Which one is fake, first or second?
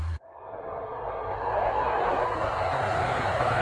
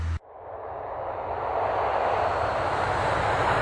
first